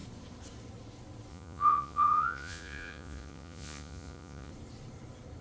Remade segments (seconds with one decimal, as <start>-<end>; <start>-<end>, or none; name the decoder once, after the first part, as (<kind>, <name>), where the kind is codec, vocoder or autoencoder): 1.3-4.5 (vocoder, Vocos)